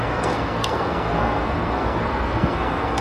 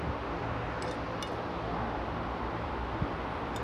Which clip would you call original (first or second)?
second